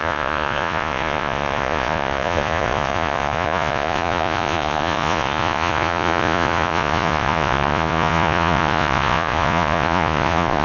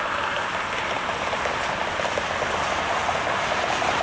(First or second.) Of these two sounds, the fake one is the first